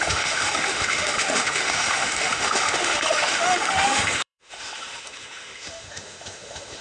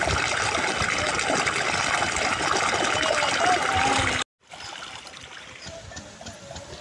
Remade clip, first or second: first